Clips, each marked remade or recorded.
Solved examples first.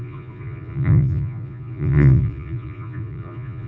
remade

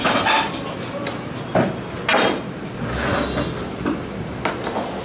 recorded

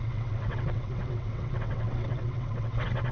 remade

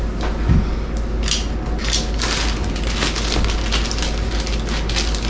recorded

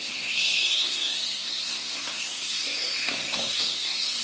remade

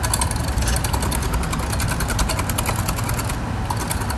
recorded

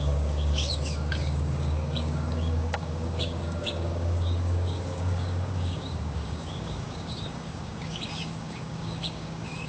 remade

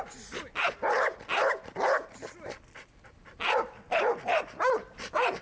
recorded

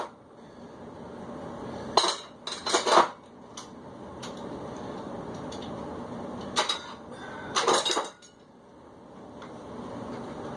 recorded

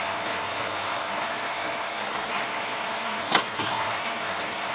remade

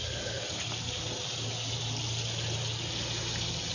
recorded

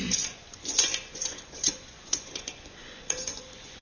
remade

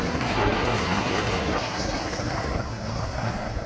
remade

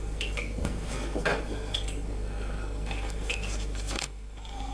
remade